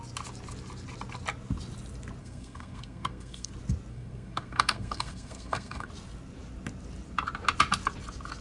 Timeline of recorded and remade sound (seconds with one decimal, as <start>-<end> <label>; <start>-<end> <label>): 0.0-2.2 recorded; 2.2-3.5 remade; 3.5-3.9 recorded; 3.9-5.9 remade; 5.9-8.4 recorded